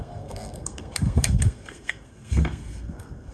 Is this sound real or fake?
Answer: fake